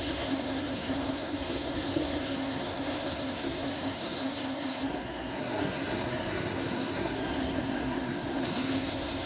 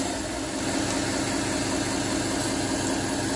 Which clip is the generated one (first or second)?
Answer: first